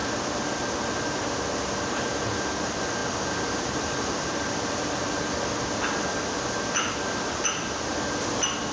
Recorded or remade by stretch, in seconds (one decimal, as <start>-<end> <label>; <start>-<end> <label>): 0.0-0.6 remade; 0.6-3.0 recorded; 3.0-5.2 remade; 5.2-8.7 recorded